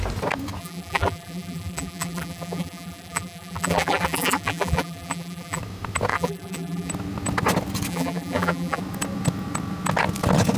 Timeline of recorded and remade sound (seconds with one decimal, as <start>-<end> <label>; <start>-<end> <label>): 0.0-0.6 recorded; 0.6-5.6 remade; 5.6-6.1 recorded; 6.1-6.9 remade; 6.9-7.9 recorded; 7.9-8.8 remade; 8.8-10.6 recorded